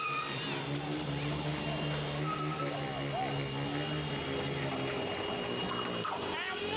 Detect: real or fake real